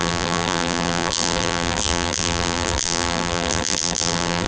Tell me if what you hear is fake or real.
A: fake